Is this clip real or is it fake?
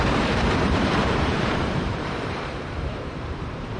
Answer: fake